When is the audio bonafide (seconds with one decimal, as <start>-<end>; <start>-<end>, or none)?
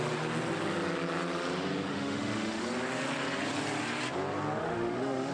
0.0-1.9; 2.6-4.6